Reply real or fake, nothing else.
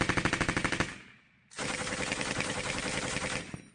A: real